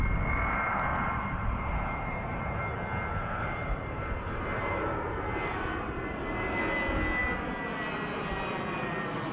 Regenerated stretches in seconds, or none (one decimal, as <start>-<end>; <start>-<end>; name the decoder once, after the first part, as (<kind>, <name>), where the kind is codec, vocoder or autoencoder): 0.9-2.6 (vocoder, BigVGAN v2); 3.2-6.6